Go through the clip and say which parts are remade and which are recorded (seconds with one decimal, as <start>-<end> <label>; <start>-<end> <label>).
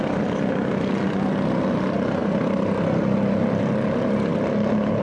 0.0-5.0 recorded